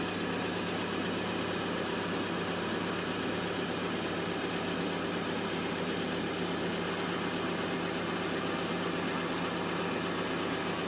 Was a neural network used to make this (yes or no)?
no